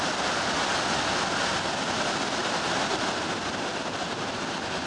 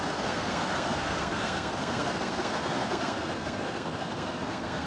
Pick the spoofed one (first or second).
second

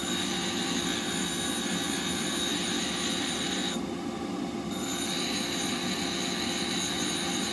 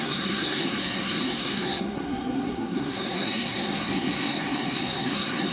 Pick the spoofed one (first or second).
second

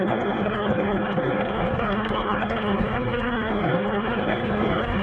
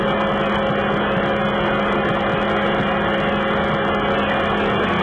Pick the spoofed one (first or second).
first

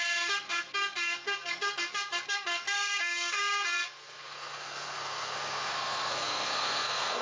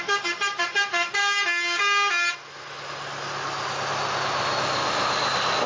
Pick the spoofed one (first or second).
first